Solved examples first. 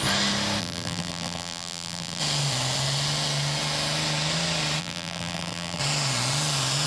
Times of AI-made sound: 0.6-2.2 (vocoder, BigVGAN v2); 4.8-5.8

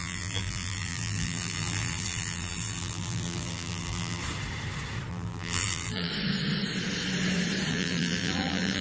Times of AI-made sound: 0.0-4.2 (vocoder, BigVGAN v2); 5.1-6.1; 7.7-8.8

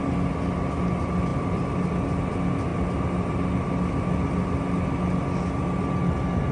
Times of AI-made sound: 1.3-2.3 (vocoder, BigVGAN v2)

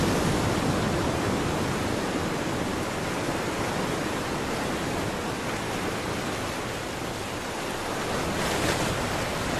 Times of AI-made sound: none